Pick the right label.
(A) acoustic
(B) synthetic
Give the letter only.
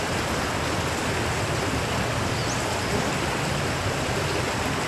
A